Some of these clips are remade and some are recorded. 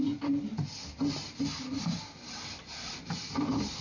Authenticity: recorded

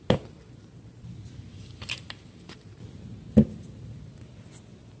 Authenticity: recorded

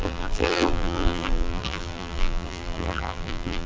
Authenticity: remade